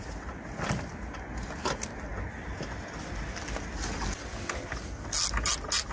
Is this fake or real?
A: real